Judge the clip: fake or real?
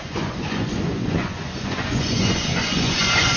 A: fake